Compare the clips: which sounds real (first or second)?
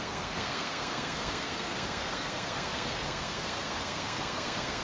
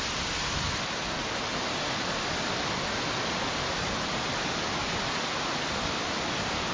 second